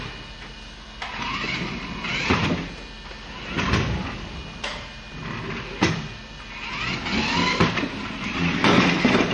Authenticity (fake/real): real